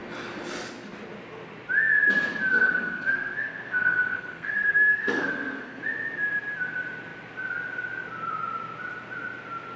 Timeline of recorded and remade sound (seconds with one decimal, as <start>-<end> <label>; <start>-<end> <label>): 0.0-2.5 recorded; 2.5-5.8 remade; 5.8-9.8 recorded